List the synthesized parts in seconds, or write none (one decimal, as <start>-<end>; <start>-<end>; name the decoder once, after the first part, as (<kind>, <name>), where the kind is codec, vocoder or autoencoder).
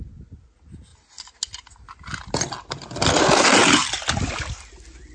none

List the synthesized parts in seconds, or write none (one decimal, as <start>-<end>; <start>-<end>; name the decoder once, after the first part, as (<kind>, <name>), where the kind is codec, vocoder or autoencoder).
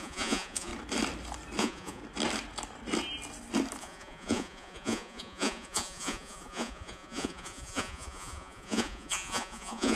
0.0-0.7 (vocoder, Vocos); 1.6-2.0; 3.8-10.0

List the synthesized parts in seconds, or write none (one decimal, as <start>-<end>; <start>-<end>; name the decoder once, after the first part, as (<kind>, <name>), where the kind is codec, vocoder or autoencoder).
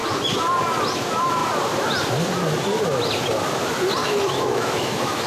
4.0-5.3 (autoencoder, DAC-VAE)